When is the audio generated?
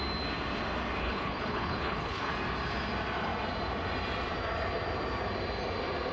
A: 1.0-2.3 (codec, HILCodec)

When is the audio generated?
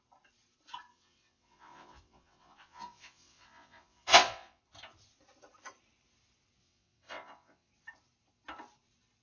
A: 0.9-4.6 (vocoder, WaveNeXt); 6.6-7.7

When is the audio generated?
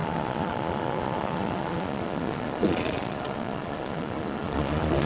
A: 0.0-5.1 (vocoder, Vocos)